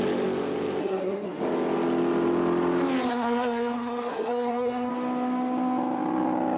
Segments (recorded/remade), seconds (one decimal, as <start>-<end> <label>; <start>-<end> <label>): 0.0-0.8 recorded; 0.8-1.4 remade; 1.4-3.1 recorded; 3.1-4.9 remade; 4.9-6.6 recorded